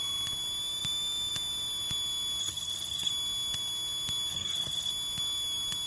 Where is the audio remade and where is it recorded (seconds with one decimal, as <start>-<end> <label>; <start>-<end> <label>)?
0.0-2.4 recorded; 2.4-3.1 remade; 3.1-4.3 recorded; 4.3-4.9 remade; 4.9-5.9 recorded